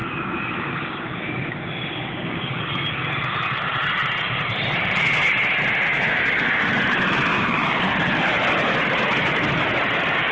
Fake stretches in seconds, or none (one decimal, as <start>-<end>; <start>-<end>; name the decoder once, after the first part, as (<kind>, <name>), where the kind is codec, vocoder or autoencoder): 0.0-2.6 (codec, DAC); 5.9-6.6; 7.3-7.9